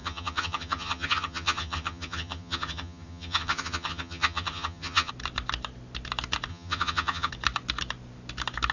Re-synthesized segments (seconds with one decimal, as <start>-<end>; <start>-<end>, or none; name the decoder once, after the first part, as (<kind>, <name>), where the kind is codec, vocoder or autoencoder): 0.0-5.1 (vocoder, HiFi-GAN); 6.5-7.3